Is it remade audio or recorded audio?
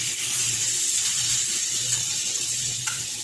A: remade